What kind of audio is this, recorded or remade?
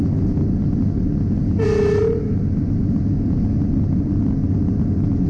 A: recorded